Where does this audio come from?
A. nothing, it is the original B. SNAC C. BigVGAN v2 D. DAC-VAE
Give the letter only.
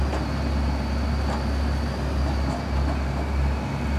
A